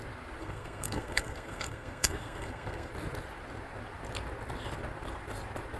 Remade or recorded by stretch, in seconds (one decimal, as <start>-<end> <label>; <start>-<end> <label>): 0.0-0.4 recorded; 0.4-2.9 remade; 2.9-5.8 recorded